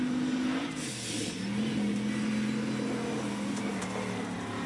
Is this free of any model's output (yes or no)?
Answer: yes